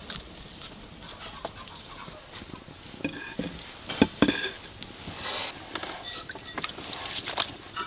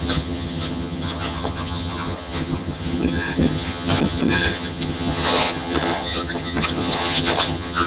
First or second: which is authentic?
first